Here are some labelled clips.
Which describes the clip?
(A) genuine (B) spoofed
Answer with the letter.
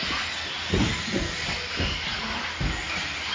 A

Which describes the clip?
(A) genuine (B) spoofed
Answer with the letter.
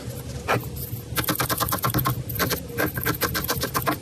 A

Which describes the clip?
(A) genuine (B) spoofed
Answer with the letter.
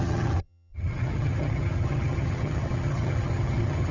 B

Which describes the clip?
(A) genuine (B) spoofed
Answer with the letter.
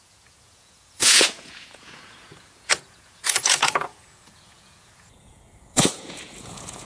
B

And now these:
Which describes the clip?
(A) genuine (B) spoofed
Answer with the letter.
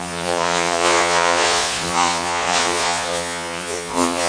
B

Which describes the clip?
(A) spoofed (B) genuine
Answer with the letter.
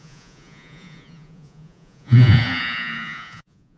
A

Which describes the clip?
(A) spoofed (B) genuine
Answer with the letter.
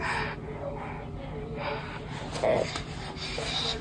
B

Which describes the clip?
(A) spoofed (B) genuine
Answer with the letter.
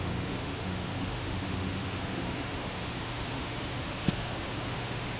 A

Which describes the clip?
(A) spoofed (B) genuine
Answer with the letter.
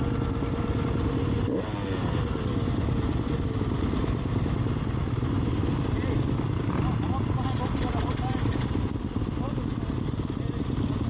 B